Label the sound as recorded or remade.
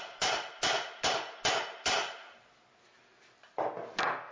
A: recorded